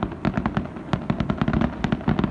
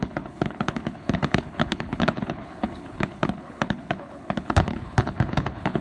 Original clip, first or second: first